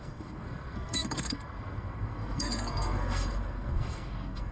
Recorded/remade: remade